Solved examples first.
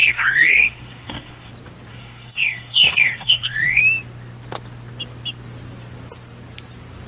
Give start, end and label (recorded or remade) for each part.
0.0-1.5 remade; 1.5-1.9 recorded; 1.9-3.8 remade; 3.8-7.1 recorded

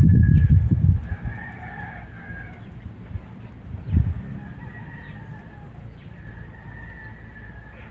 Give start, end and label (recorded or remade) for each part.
0.0-1.4 recorded; 1.4-2.0 remade; 2.0-7.9 recorded

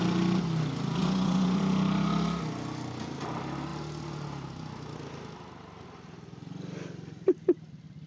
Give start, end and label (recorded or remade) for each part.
0.0-1.0 recorded; 1.0-1.6 remade; 1.6-8.1 recorded

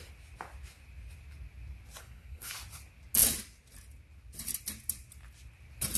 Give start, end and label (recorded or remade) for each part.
0.0-2.0 recorded; 2.0-2.5 remade; 2.5-6.0 recorded

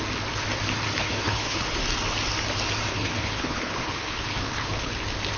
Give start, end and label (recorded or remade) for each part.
0.0-1.0 recorded; 1.0-1.8 remade; 1.8-2.9 recorded; 2.9-4.9 remade; 4.9-5.4 recorded

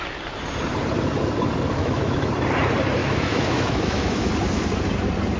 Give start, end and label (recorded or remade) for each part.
0.0-1.8 recorded; 1.8-2.3 remade; 2.3-3.0 recorded; 3.0-4.3 remade; 4.3-5.4 recorded